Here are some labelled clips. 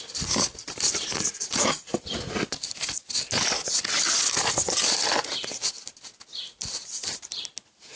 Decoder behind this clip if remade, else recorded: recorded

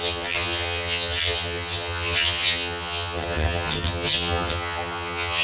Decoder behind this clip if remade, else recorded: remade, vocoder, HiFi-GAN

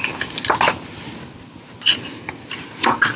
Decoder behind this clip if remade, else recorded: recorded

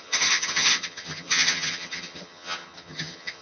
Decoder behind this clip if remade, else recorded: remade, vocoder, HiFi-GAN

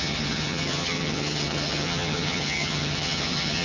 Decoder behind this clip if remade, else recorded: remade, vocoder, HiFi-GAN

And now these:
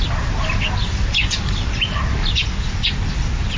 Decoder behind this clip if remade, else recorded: recorded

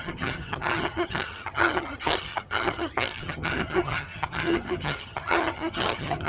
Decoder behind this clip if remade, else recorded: remade, vocoder, HiFi-GAN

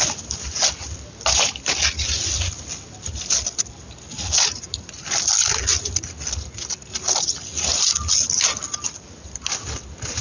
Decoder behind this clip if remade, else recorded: recorded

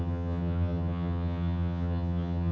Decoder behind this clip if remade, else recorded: remade, vocoder, HiFi-GAN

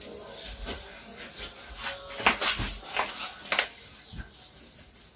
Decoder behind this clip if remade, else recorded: recorded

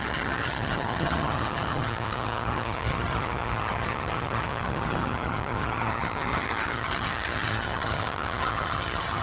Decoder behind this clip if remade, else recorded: remade, vocoder, HiFi-GAN